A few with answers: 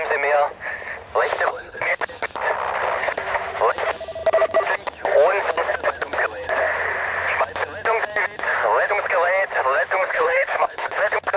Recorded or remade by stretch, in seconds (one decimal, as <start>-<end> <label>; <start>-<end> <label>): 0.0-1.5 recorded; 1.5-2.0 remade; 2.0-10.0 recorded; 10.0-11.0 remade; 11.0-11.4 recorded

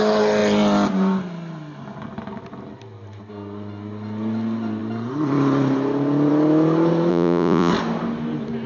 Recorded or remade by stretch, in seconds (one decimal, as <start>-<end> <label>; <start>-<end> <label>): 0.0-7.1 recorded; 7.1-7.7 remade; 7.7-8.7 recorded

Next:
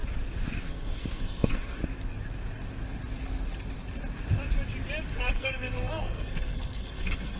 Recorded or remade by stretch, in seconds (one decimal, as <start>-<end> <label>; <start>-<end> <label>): 0.0-0.6 recorded; 0.6-1.8 remade; 1.8-5.2 recorded; 5.2-7.4 remade

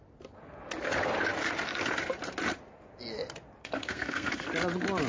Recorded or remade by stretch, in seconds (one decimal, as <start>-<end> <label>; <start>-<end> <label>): 0.0-3.6 recorded; 3.6-4.5 remade; 4.5-5.1 recorded